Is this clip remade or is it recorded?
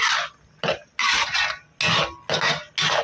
recorded